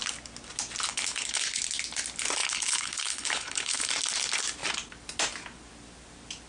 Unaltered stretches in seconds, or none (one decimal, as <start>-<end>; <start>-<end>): 0.0-0.9; 1.6-2.4; 3.9-6.5